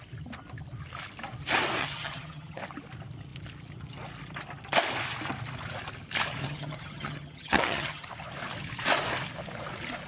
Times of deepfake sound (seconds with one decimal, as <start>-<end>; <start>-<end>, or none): 1.8-2.6; 6.4-8.1